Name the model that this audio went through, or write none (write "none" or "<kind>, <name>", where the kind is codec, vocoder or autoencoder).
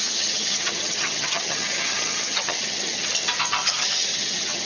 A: vocoder, HiFi-GAN